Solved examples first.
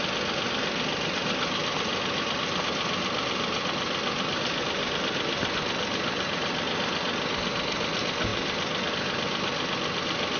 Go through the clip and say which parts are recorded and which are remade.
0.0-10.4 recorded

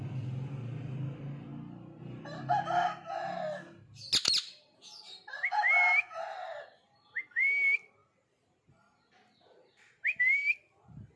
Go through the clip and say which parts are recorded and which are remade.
0.0-11.2 recorded

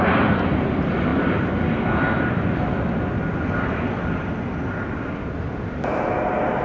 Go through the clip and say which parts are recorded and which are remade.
0.0-6.6 recorded

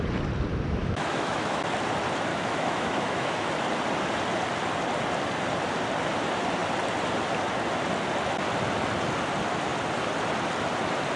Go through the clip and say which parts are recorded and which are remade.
0.0-0.8 recorded; 0.8-1.6 remade; 1.6-2.3 recorded; 2.3-3.5 remade; 3.5-11.2 recorded